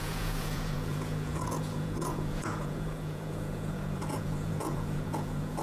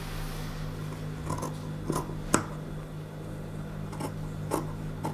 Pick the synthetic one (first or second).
first